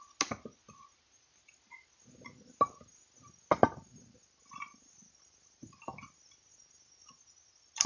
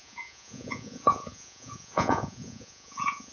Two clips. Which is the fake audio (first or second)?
second